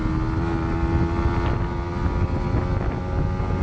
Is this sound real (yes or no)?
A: yes